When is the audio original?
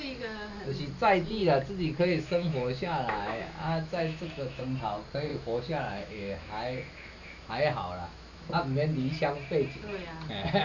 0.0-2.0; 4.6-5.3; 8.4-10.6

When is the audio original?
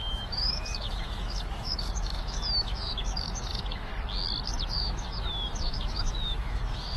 3.9-4.7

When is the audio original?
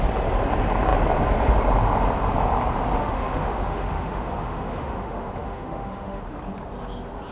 0.0-3.0; 6.2-7.3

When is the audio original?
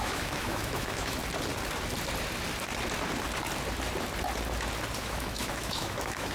1.2-5.0